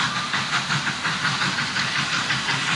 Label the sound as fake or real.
real